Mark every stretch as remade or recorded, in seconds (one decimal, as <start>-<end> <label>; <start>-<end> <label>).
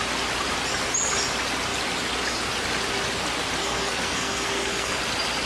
0.0-3.6 recorded; 3.6-5.0 remade; 5.0-5.5 recorded